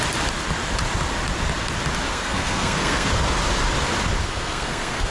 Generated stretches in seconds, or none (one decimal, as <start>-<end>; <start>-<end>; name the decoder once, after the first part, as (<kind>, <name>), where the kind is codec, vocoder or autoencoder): 2.1-3.1 (codec, SNAC); 4.2-5.1